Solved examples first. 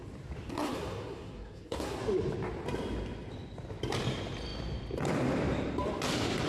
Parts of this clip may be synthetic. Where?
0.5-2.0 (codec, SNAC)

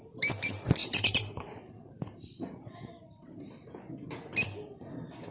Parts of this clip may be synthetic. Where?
0.8-3.4 (vocoder, BigVGAN v2)

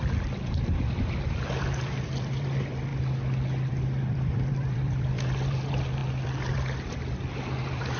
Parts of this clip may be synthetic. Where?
0.0-2.9 (vocoder, BigVGAN v2); 3.7-8.0

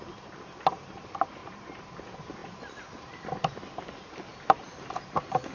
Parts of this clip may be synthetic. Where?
1.4-1.9 (vocoder, BigVGAN v2); 4.3-4.9

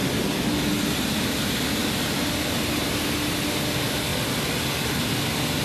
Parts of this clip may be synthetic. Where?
1.8-2.6 (vocoder, BigVGAN v2)

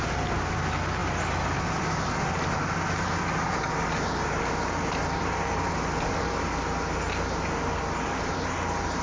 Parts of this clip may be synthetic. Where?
none